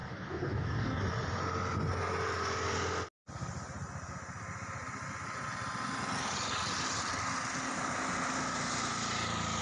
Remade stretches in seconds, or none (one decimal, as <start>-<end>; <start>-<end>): 0.0-1.0